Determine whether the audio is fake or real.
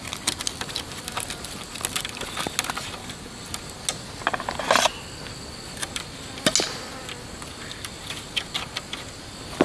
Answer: real